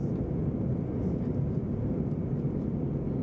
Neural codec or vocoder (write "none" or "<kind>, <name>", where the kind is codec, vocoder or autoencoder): none